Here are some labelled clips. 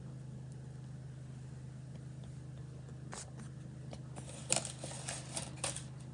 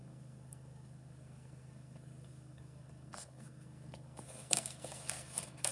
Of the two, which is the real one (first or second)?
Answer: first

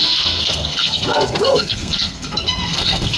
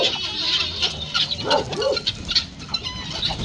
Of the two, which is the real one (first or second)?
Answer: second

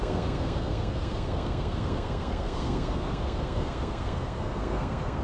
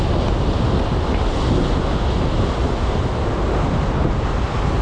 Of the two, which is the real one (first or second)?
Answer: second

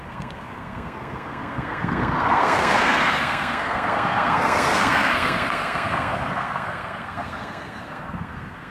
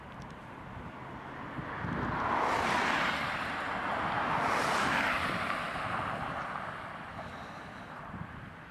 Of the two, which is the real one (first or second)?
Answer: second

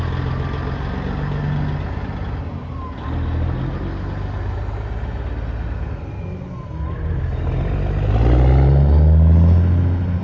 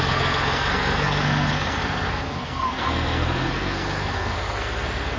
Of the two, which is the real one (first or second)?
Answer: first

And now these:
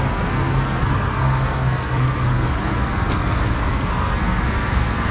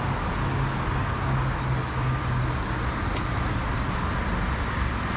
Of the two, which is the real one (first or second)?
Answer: second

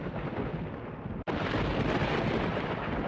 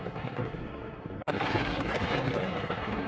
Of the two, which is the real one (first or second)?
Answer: first